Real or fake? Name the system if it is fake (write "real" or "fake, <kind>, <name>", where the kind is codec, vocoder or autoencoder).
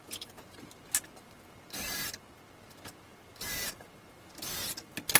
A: real